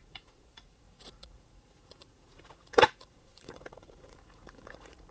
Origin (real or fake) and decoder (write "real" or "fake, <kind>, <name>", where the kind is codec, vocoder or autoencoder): fake, vocoder, Vocos